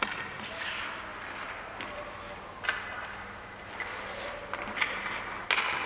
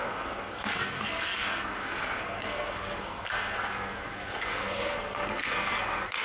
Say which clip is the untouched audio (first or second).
first